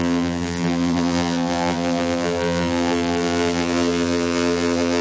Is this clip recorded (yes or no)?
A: no